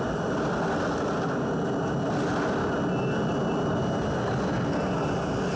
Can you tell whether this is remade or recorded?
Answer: recorded